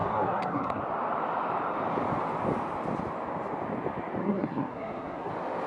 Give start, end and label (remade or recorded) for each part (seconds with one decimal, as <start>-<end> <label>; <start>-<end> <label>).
0.0-0.8 remade; 0.8-4.2 recorded; 4.2-5.3 remade; 5.3-5.7 recorded